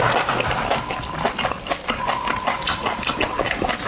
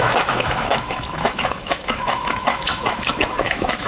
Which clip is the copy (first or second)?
second